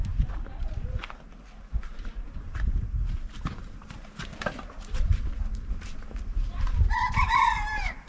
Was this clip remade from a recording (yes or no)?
yes